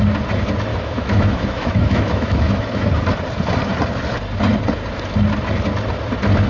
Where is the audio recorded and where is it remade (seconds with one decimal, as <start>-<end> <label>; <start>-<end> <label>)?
0.0-0.7 recorded; 0.7-2.9 remade; 2.9-6.5 recorded